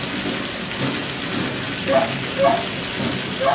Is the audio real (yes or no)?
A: yes